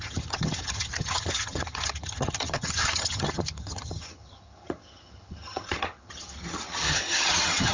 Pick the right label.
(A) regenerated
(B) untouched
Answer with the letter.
A